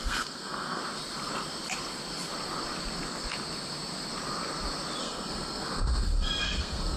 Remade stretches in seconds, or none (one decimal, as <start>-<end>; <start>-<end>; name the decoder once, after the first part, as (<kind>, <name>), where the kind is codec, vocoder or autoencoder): 0.0-0.8 (codec, SNAC); 5.0-7.0